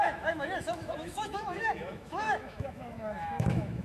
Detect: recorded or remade remade